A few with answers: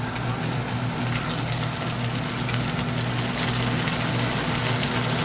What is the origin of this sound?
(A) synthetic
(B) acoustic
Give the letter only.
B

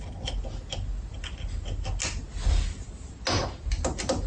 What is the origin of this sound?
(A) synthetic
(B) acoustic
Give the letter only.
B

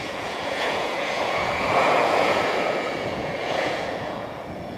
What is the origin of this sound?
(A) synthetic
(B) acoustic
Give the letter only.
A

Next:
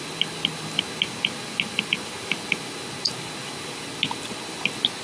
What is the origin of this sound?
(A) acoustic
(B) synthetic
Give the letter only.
A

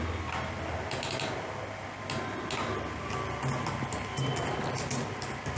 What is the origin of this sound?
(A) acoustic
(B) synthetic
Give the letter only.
A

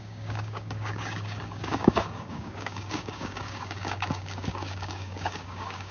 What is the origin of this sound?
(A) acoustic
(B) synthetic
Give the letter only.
B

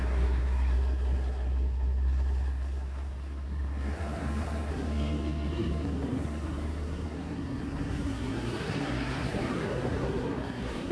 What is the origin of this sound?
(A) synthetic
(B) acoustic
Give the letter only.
A